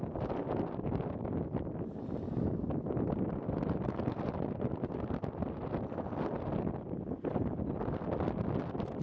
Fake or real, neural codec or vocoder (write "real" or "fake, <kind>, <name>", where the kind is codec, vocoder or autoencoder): real